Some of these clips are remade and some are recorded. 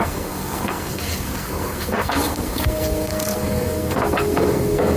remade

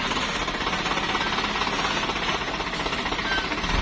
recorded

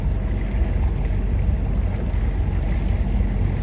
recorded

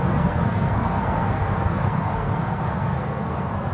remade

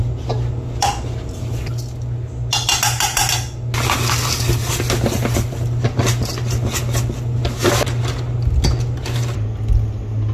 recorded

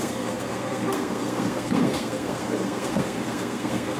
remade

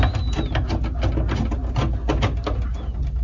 recorded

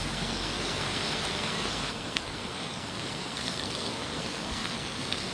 remade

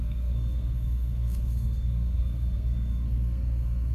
remade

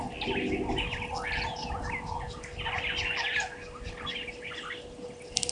recorded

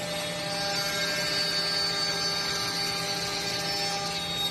recorded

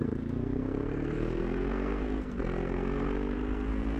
remade